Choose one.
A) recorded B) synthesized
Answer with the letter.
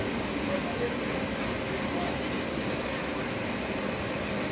A